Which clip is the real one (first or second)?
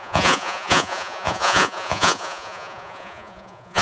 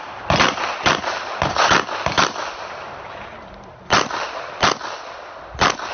second